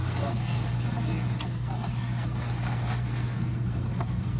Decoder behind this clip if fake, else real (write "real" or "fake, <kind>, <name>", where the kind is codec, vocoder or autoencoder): fake, codec, SNAC